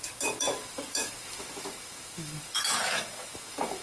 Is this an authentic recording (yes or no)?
no